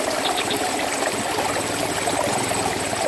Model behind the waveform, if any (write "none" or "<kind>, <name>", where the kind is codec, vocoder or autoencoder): none